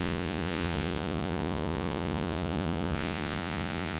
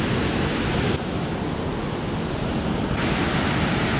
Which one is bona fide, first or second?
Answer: second